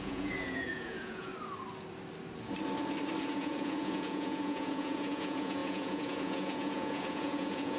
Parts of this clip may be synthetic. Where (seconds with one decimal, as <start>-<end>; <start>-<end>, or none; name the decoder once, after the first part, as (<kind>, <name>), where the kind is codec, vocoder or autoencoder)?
0.0-1.3 (vocoder, Vocos); 3.2-7.8